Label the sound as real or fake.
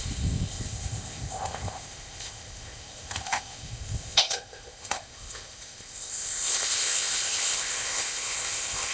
fake